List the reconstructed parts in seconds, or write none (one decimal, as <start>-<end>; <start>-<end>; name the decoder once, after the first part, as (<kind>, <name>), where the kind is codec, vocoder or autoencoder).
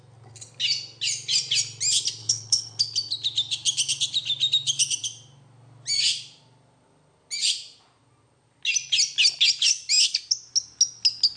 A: 2.2-2.8 (codec, HILCodec)